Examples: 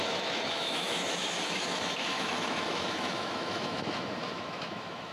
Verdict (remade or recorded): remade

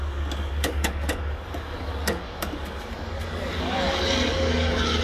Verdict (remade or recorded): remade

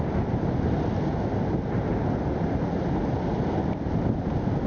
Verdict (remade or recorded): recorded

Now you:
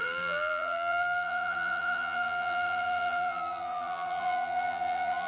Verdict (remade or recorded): remade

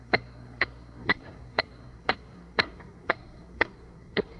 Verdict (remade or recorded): remade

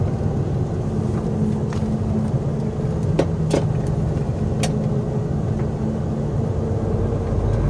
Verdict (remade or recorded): recorded